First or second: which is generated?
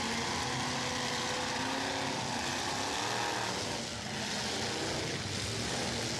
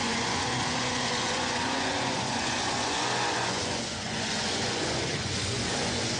second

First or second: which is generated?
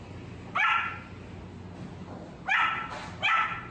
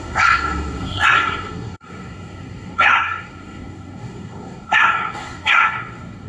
second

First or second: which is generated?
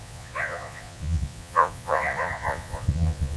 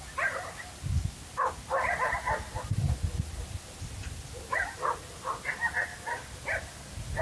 first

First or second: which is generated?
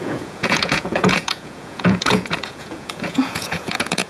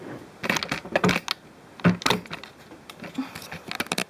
first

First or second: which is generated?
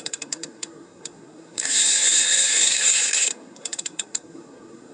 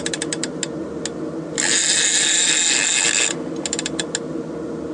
first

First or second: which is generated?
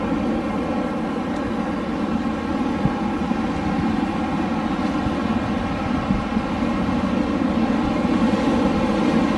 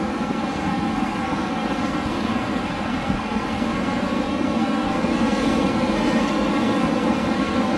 second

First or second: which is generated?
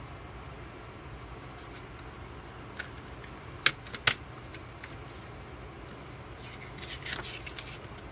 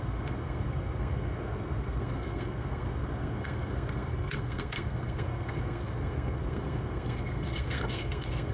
second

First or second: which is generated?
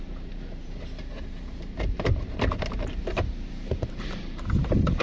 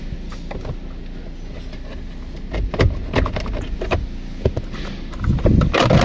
first